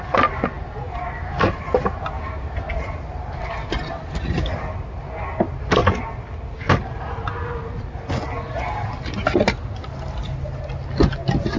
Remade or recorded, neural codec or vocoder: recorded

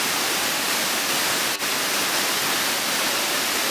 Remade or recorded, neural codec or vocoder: recorded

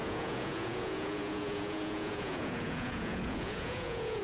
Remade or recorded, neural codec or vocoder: remade, vocoder, Vocos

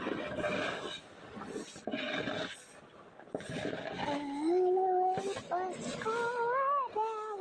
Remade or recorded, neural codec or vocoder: recorded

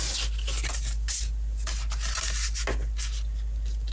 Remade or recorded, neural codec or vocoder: recorded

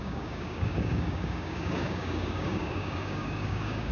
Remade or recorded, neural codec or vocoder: remade, codec, DAC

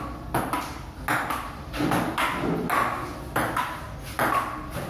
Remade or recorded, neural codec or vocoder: recorded